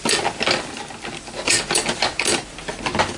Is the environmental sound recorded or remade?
recorded